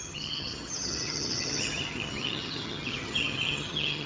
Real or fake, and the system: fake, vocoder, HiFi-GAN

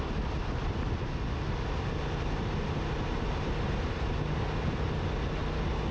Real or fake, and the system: real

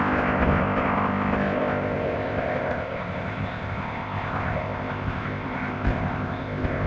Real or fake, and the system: fake, codec, ZipCodec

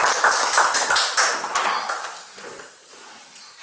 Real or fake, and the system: real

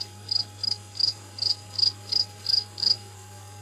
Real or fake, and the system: fake, codec, SNAC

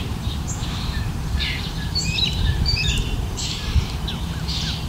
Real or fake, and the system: fake, vocoder, BigVGAN v2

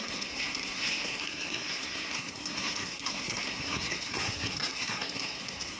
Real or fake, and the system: fake, codec, SNAC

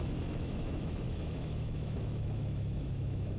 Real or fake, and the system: fake, autoencoder, DAC-VAE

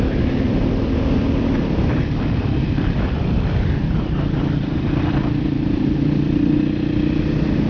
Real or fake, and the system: real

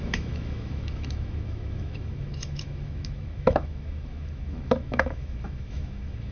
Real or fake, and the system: fake, autoencoder, DAC-VAE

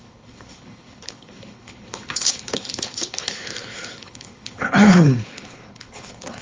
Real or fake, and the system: fake, codec, HILCodec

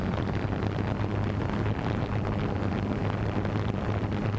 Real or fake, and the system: real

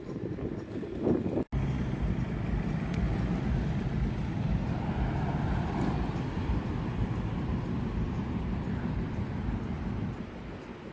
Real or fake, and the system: real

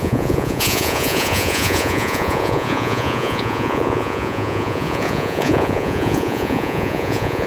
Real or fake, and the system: fake, vocoder, Vocos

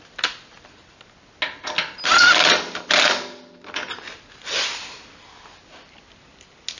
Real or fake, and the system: real